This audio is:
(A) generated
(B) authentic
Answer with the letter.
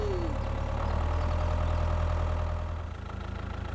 B